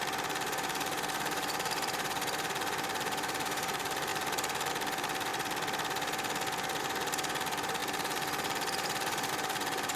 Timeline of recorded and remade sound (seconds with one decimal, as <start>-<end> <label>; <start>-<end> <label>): 0.0-5.3 remade; 5.3-6.8 recorded; 6.8-10.0 remade

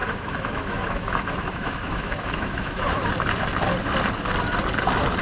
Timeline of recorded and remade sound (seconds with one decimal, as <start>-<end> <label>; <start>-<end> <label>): 0.0-3.1 remade; 3.1-5.2 recorded

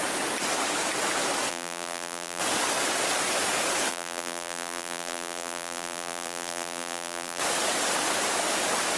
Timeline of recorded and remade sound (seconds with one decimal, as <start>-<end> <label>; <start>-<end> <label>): 0.0-1.5 recorded; 1.5-2.4 remade; 2.4-3.9 recorded; 3.9-7.4 remade; 7.4-9.0 recorded